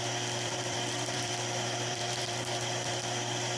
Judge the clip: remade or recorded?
remade